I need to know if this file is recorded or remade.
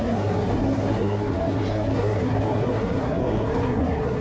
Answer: remade